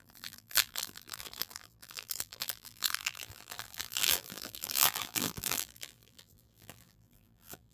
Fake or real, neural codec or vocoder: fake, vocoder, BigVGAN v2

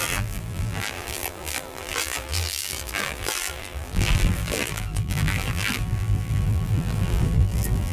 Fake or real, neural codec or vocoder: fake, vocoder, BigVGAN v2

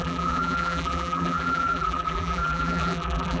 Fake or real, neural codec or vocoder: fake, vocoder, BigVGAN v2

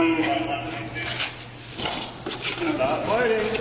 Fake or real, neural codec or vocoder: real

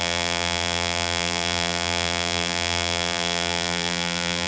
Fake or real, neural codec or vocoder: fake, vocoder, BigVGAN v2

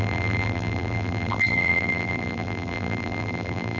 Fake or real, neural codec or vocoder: fake, vocoder, BigVGAN v2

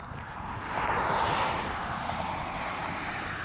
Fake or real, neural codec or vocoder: fake, vocoder, BigVGAN v2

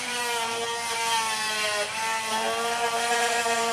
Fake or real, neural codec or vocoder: fake, vocoder, BigVGAN v2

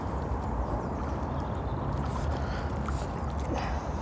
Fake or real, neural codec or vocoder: real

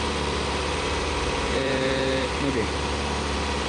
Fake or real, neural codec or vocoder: fake, vocoder, BigVGAN v2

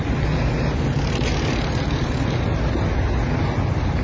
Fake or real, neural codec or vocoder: real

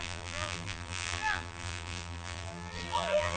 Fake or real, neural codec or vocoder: fake, vocoder, BigVGAN v2